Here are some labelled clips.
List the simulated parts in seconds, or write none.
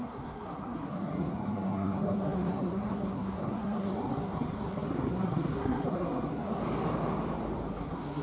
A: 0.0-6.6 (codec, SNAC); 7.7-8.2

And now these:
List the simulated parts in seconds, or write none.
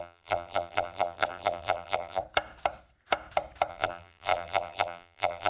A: 0.0-2.2 (vocoder, BigVGAN v2); 3.7-5.5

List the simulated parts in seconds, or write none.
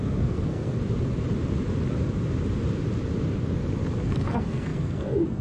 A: 0.0-0.8 (codec, SNAC); 4.0-5.4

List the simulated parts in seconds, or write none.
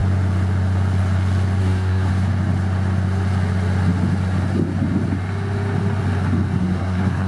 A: 1.6-2.1 (codec, SNAC); 6.6-7.3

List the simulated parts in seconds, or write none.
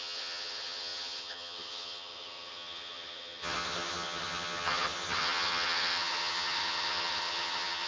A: 0.0-7.9 (vocoder, HiFi-GAN)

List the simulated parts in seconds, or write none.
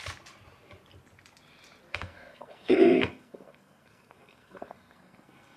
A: 1.9-5.6 (codec, SNAC)